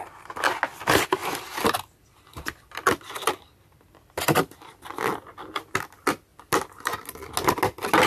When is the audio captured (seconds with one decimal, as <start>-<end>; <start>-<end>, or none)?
0.0-1.2; 5.2-8.1